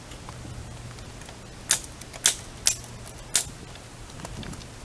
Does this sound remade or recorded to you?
recorded